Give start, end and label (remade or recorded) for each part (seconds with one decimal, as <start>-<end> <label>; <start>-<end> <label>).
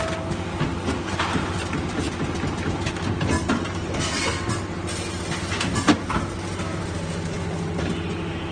0.0-0.7 recorded; 0.7-1.5 remade; 1.5-8.5 recorded